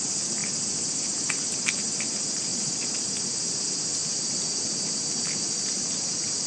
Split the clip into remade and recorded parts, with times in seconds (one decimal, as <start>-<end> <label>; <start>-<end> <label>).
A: 0.0-2.5 recorded; 2.5-3.1 remade; 3.1-6.5 recorded